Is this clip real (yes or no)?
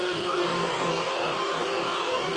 no